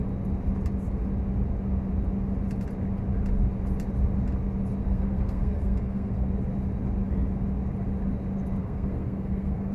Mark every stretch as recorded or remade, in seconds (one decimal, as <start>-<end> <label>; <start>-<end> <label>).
0.0-4.8 recorded; 4.8-6.3 remade; 6.3-8.6 recorded; 8.6-9.7 remade